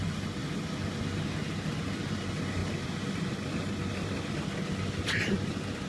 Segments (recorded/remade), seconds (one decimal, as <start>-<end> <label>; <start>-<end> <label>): 0.0-5.9 recorded